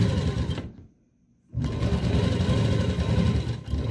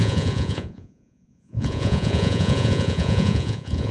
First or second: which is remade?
second